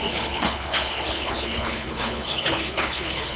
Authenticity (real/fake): fake